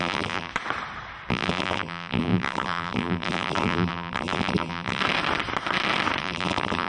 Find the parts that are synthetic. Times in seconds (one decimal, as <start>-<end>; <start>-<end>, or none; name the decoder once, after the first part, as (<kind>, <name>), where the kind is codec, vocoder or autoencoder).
0.0-0.5 (vocoder, BigVGAN v2); 1.3-5.0; 6.2-6.9